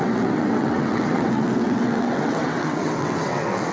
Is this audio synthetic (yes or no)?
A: yes